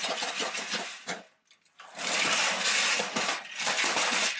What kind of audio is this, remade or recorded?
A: recorded